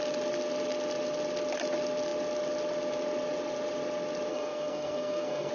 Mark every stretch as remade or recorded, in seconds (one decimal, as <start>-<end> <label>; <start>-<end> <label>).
0.0-4.3 recorded; 4.3-5.5 remade